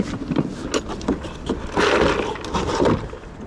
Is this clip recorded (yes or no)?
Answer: yes